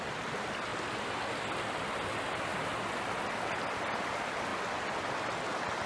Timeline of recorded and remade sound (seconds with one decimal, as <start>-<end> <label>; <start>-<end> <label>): 0.0-5.9 recorded